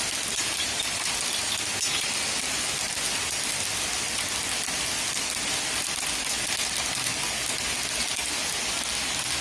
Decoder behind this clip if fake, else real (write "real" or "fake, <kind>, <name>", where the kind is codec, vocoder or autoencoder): real